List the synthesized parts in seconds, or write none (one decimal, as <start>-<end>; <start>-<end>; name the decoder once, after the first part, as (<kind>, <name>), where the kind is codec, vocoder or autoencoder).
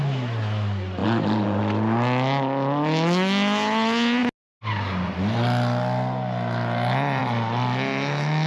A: 1.0-1.6 (vocoder, BigVGAN v2)